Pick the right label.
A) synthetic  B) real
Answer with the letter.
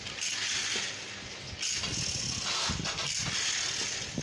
B